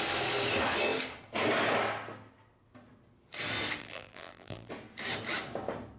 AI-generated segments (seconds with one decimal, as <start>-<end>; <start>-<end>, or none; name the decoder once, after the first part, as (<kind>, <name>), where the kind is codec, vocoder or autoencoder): 3.8-4.7 (vocoder, BigVGAN v2)